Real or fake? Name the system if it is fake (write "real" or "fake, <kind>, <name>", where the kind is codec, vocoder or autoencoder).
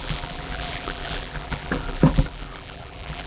fake, vocoder, BigVGAN v2